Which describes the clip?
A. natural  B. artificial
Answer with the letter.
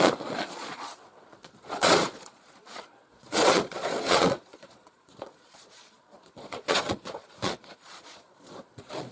B